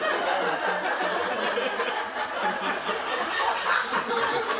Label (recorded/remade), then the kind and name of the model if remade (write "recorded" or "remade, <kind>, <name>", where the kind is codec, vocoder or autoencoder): recorded